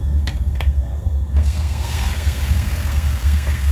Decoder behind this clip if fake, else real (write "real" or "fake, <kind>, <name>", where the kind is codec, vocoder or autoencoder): fake, codec, SNAC